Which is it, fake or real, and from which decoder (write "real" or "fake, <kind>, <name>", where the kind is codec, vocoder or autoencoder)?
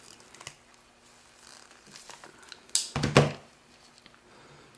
real